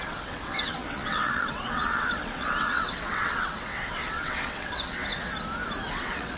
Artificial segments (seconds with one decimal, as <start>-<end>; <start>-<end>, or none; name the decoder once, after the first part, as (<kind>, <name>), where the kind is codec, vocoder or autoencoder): 0.0-5.0 (vocoder, WaveNeXt); 5.9-6.4